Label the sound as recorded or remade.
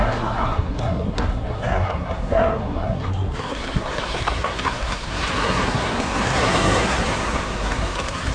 remade